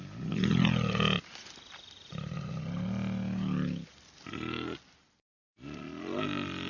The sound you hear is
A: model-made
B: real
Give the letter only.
B